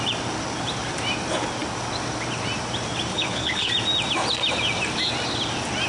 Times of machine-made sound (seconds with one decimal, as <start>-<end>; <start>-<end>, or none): 3.1-3.7